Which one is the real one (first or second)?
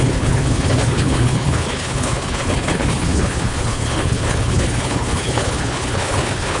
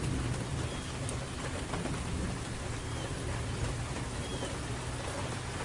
second